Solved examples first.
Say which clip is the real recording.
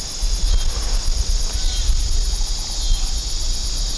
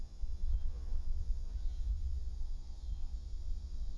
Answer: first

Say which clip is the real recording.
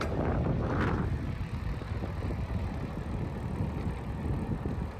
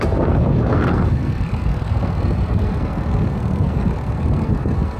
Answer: first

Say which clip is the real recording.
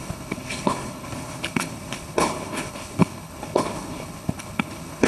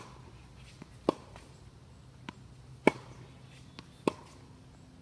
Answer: second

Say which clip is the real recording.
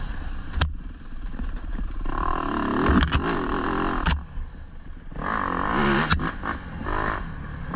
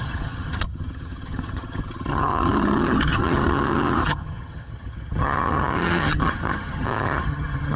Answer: first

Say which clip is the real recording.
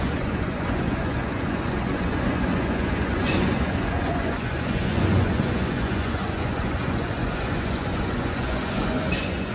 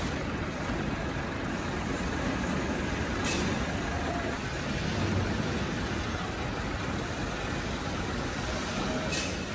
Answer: second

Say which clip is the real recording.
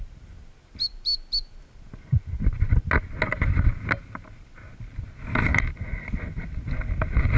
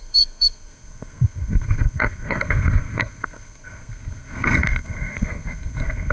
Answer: first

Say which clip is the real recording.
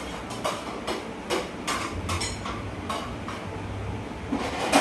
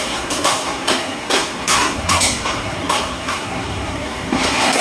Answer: first